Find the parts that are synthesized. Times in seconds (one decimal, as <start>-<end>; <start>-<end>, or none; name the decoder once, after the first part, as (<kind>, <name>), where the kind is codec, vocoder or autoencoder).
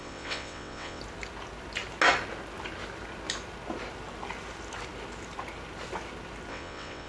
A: 0.0-1.0 (vocoder, WaveNeXt); 6.5-7.1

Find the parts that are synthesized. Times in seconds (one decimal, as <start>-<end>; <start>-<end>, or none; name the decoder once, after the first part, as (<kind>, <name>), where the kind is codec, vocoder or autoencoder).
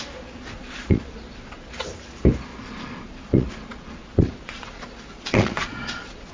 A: 0.4-1.7 (vocoder, Vocos); 2.5-6.3